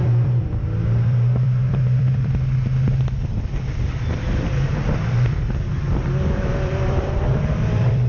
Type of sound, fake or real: fake